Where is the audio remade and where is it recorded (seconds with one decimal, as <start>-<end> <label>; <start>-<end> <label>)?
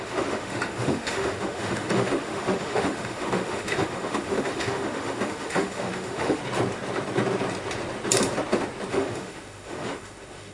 0.0-6.4 remade; 6.4-8.9 recorded; 8.9-10.5 remade